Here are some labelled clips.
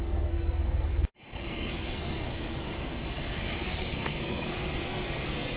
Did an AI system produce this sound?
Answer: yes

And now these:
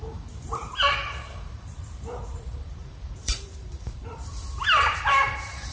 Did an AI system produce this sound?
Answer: yes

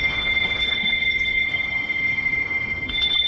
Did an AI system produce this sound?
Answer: yes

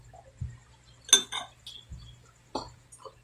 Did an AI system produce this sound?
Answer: no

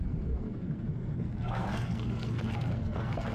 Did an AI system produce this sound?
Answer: yes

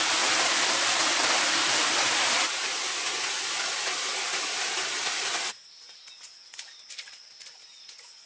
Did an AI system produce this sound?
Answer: no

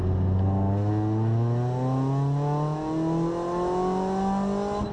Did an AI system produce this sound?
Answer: no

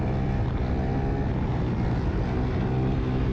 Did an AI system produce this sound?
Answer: no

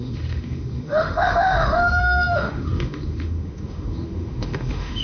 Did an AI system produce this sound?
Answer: yes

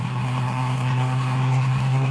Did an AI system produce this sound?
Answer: yes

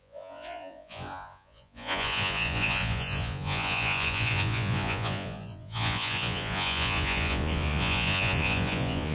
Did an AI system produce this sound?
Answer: yes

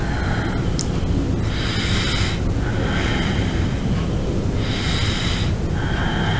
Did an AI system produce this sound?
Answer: no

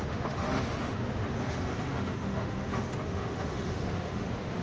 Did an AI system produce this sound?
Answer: yes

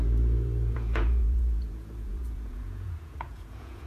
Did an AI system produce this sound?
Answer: yes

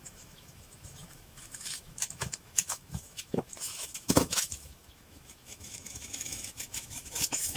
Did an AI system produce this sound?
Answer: yes